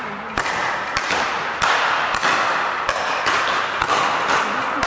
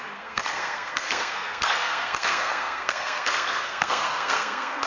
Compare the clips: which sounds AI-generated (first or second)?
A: second